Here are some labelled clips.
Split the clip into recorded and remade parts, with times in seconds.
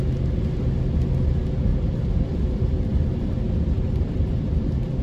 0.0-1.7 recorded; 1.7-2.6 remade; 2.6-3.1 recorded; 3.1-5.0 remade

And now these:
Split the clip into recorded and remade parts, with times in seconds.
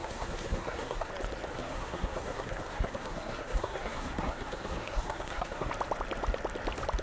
0.0-1.1 remade; 1.1-1.5 recorded; 1.5-5.7 remade; 5.7-7.0 recorded